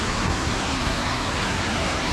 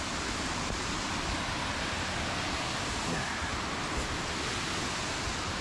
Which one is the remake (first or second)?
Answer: first